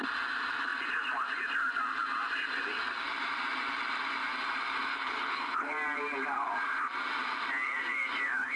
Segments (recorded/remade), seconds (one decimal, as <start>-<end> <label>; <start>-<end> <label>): 0.0-4.9 recorded; 4.9-5.7 remade; 5.7-8.6 recorded